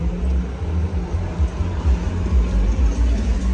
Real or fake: real